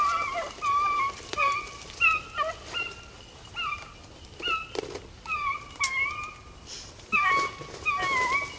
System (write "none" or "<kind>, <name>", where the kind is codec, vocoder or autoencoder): none